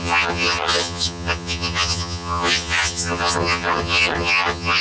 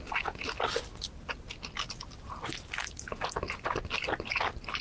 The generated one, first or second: first